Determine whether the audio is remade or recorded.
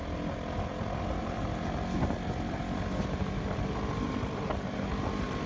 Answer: recorded